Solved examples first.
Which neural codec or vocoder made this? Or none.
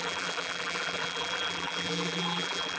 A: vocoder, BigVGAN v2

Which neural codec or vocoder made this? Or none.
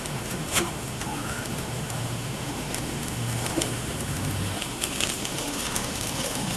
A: autoencoder, DAC-VAE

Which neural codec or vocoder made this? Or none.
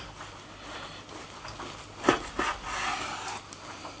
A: none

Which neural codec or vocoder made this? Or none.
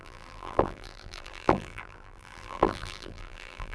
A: vocoder, BigVGAN v2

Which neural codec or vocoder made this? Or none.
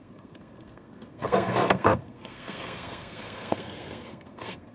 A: codec, SNAC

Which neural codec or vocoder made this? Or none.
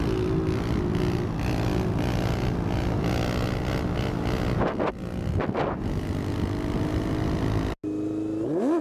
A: none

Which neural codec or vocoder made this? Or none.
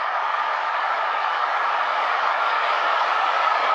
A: codec, DAC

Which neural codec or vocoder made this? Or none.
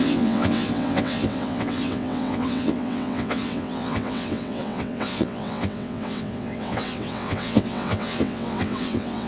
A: vocoder, WaveNeXt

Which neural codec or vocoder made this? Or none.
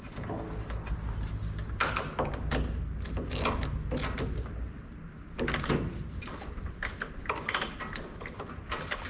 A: none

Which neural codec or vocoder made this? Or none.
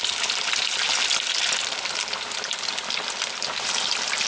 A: none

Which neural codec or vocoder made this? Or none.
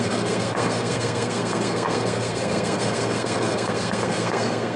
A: codec, SNAC